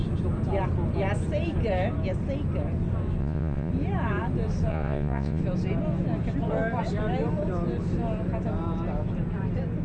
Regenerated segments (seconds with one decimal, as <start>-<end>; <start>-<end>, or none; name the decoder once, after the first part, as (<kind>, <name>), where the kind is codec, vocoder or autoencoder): 3.2-3.7 (vocoder, Vocos); 4.7-5.4